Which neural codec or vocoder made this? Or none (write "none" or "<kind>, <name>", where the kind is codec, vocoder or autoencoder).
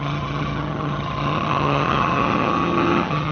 vocoder, HiFi-GAN